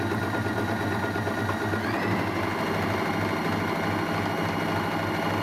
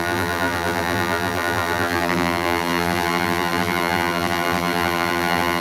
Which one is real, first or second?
first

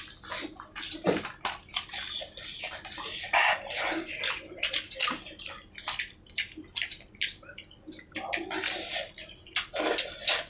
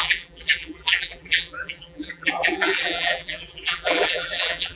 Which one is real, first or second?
first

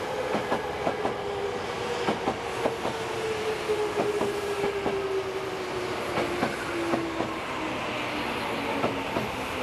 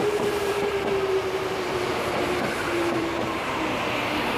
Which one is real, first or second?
first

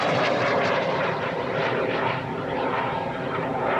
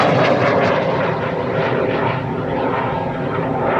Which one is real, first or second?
second